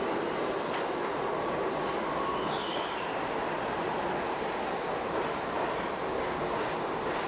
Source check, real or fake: real